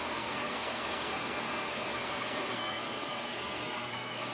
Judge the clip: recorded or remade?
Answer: remade